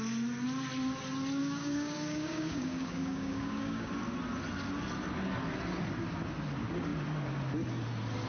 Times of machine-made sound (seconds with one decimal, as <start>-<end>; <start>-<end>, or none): 1.4-3.9